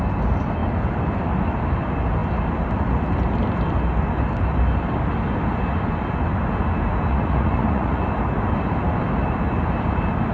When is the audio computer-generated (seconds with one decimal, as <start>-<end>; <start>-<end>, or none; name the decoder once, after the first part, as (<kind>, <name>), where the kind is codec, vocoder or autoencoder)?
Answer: 7.1-8.0 (vocoder, Vocos)